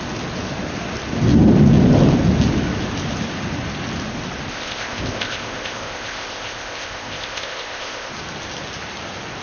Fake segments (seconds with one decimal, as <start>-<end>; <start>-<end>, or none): 4.5-8.1